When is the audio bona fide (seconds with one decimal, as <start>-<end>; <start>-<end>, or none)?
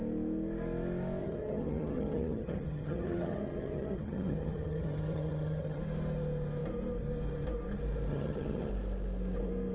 0.0-1.2; 5.8-8.1; 8.7-9.7